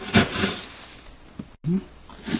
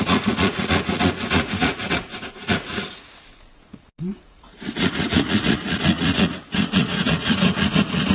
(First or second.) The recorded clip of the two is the first